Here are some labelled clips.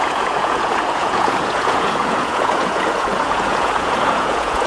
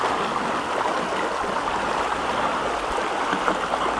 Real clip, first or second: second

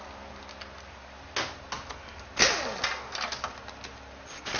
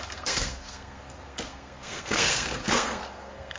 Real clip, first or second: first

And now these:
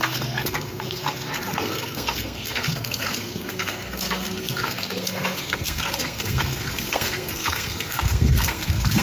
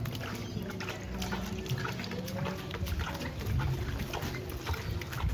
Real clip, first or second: second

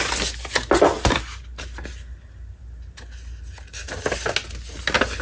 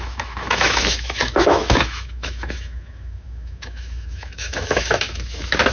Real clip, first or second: first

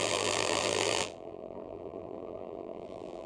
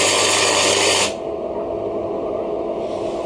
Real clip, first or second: second